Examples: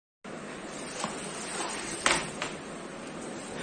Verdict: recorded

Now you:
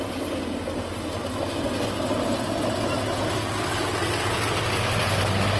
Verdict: recorded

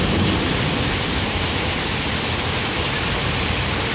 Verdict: remade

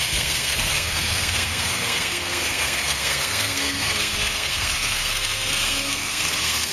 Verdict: remade